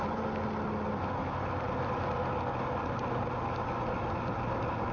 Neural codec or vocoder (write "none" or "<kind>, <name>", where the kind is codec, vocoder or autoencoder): none